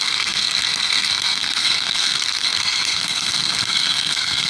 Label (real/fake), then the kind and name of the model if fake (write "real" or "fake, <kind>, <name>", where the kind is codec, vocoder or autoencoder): fake, codec, SNAC